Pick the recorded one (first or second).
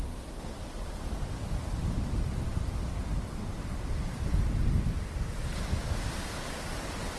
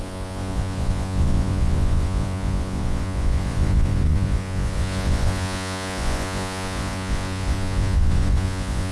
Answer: first